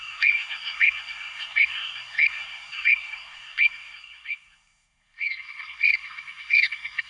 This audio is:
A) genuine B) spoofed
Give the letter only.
B